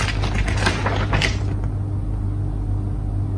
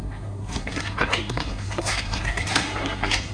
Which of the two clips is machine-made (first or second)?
second